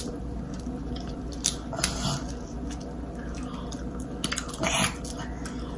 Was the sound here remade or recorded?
recorded